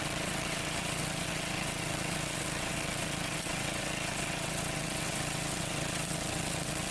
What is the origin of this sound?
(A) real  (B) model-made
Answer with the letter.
B